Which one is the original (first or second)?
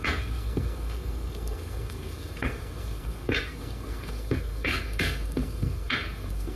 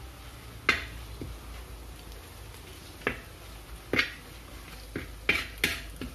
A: second